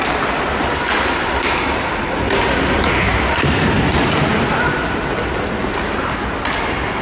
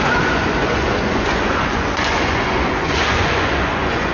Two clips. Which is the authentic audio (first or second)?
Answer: first